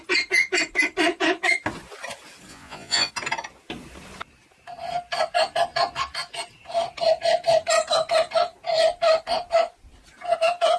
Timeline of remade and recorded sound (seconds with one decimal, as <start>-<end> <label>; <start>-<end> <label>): 0.0-2.5 recorded; 2.5-3.1 remade; 3.1-10.8 recorded